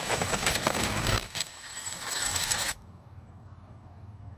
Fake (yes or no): yes